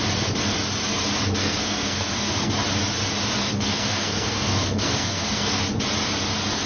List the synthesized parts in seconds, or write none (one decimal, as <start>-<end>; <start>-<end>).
1.4-2.5; 3.4-5.6